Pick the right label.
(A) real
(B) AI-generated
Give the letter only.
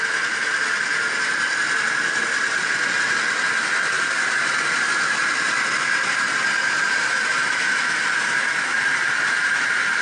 A